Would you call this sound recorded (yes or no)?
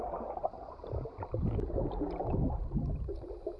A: yes